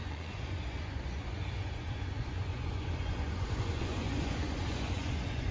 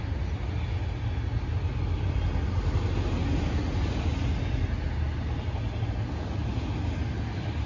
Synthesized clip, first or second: first